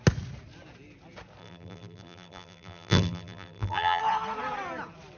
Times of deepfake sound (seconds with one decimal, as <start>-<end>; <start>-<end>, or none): 1.4-4.0